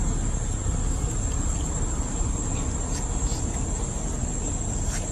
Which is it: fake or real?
real